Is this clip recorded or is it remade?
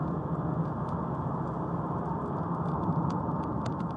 recorded